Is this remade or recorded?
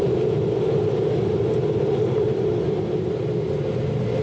recorded